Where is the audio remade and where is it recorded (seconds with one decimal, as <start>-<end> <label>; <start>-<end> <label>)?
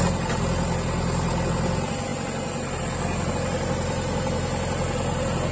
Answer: 0.0-5.5 recorded